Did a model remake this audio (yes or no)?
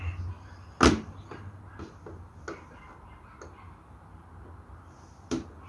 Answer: no